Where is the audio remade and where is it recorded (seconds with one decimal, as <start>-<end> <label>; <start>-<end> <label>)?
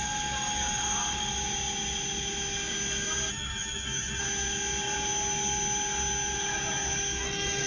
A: 0.0-3.3 recorded; 3.3-4.2 remade; 4.2-7.2 recorded; 7.2-7.7 remade